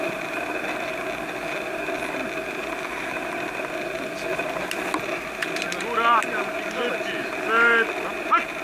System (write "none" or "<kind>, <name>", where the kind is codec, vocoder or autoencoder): none